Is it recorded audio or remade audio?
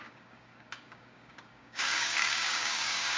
remade